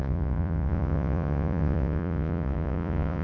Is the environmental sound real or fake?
fake